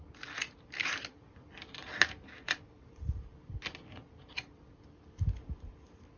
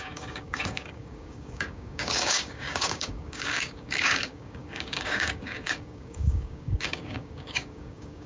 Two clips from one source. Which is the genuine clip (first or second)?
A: first